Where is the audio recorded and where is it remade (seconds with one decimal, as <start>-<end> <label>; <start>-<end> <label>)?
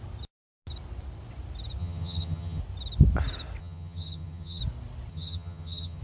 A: 0.0-1.8 recorded; 1.8-2.6 remade; 2.6-3.6 recorded; 3.6-4.6 remade; 4.6-5.1 recorded; 5.1-6.0 remade